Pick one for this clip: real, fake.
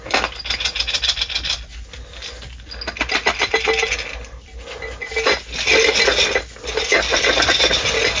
real